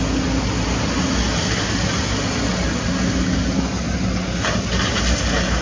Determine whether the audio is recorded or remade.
recorded